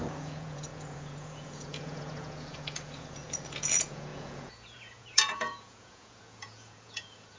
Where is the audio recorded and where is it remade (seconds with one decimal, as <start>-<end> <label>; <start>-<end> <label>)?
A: 0.0-7.4 remade